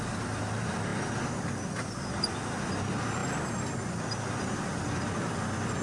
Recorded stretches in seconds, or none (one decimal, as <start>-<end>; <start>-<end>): 0.0-5.8